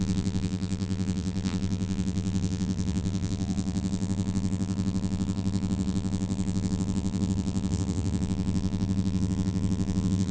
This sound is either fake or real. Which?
fake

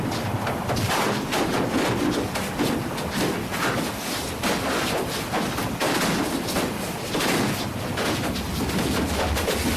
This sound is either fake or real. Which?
real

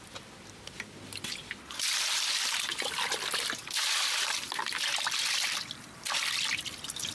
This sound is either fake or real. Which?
real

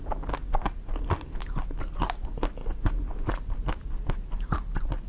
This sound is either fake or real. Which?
real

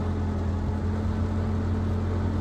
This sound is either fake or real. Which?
real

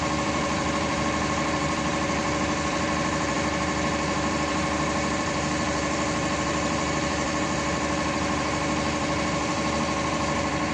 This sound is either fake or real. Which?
fake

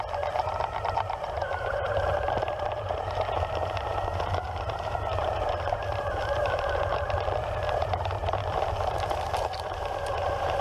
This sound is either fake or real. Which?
fake